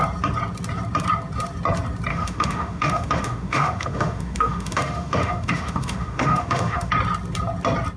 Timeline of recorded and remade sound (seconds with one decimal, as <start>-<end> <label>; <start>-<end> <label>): 0.0-2.1 recorded; 2.1-6.9 remade; 6.9-8.0 recorded